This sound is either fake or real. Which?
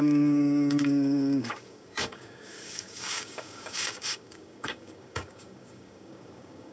fake